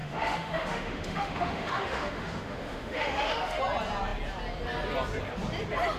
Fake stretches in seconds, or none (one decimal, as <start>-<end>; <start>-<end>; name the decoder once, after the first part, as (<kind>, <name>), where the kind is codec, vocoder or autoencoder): 0.0-3.6 (autoencoder, DAC-VAE)